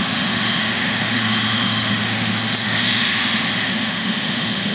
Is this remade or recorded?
remade